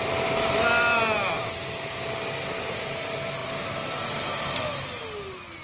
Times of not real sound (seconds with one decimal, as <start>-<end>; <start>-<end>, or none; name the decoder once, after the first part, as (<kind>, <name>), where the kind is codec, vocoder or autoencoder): none